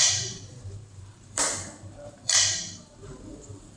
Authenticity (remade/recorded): remade